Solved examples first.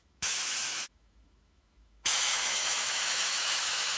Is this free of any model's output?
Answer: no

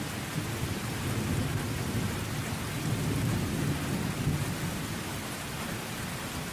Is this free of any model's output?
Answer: yes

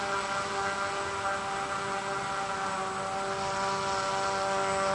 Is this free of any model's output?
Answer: yes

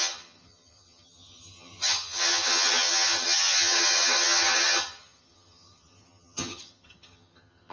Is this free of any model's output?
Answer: no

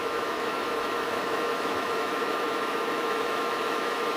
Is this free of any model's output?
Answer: no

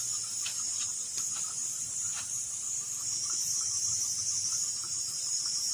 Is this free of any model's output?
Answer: no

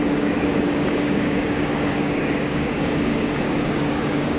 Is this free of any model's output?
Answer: no